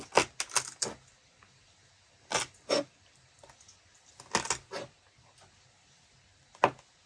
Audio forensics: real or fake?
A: real